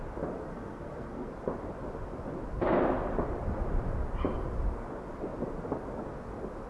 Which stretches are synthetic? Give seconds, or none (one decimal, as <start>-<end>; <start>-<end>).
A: 0.5-1.3